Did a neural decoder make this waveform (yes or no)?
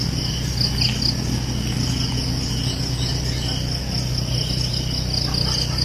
no